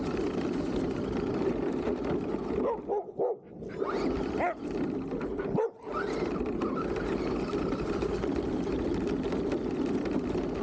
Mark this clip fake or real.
real